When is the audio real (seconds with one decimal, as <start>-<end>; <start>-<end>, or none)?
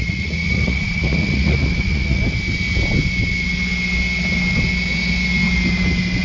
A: 2.2-6.2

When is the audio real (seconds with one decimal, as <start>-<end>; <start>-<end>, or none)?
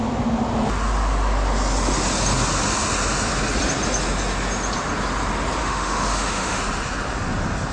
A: 0.0-5.6; 6.6-7.7